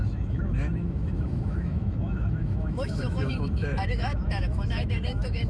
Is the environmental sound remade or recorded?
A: remade